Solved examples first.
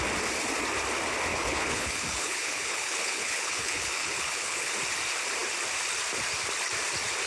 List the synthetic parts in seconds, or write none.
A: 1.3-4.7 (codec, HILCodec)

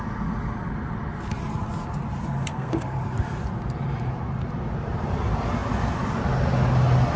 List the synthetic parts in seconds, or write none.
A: 2.5-3.0 (codec, SNAC)

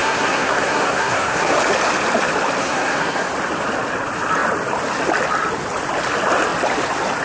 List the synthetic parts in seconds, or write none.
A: 0.0-1.6 (codec, SNAC); 2.6-3.3

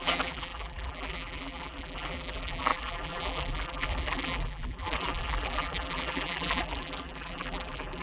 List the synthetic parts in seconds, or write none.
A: 0.0-8.0 (vocoder, BigVGAN v2)

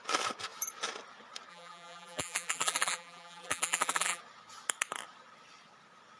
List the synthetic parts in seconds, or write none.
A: 1.5-4.2 (vocoder, BigVGAN v2)